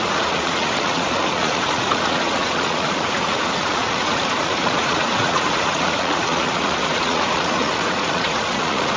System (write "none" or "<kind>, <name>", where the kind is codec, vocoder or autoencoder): vocoder, Vocos